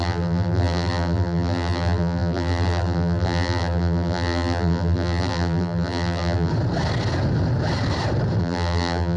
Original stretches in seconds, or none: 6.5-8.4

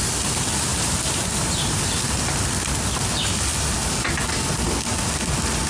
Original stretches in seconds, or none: 0.0-0.7; 1.8-5.7

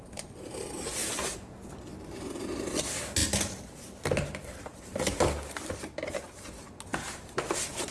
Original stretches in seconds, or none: 0.0-6.9; 7.4-7.9

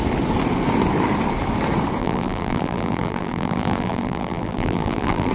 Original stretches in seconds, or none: 0.0-2.0

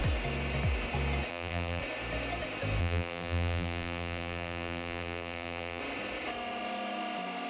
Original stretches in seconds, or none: 0.0-1.3; 1.8-2.8; 5.8-7.5

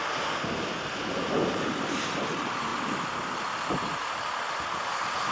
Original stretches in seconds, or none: 0.0-5.3